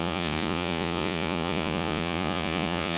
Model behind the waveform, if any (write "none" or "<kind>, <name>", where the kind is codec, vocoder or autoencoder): vocoder, Vocos